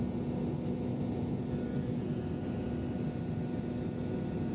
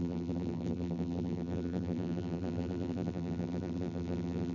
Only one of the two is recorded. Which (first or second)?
first